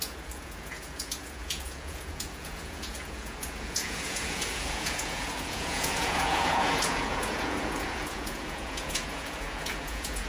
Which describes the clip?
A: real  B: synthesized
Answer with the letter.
B